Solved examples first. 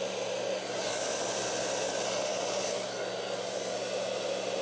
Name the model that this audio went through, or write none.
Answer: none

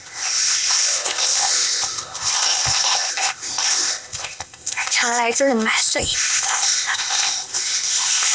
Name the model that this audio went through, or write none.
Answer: codec, ZipCodec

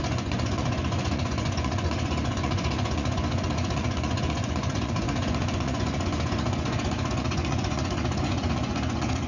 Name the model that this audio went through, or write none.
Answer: vocoder, Vocos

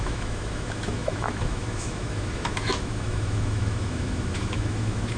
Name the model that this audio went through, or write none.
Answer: autoencoder, DAC-VAE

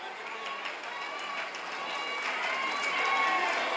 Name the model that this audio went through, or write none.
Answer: none